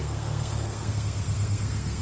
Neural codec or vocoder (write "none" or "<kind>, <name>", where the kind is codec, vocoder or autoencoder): codec, SNAC